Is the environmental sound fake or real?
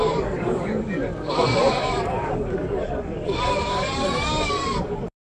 fake